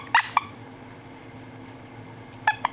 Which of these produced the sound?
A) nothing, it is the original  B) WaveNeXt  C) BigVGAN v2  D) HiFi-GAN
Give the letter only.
C